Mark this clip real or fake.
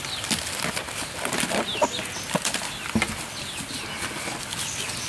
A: real